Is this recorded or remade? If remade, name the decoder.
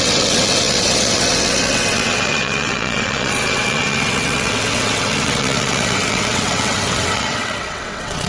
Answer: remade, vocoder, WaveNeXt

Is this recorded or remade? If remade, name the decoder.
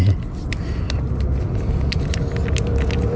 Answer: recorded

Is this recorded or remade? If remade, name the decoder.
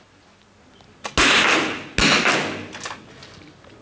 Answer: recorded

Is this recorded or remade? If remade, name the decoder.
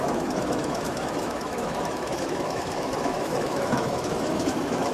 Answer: remade, autoencoder, DAC-VAE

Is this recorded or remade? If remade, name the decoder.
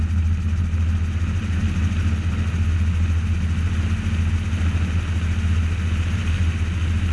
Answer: recorded